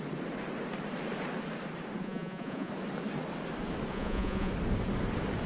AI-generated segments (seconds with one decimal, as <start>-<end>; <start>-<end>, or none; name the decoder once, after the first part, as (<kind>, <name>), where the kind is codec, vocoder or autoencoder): 2.0-2.7 (vocoder, Vocos); 3.9-4.5

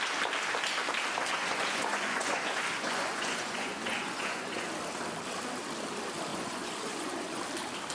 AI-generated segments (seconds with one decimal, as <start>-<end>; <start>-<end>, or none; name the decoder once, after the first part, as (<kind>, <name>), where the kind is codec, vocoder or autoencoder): 1.3-4.7 (vocoder, Vocos); 6.3-7.4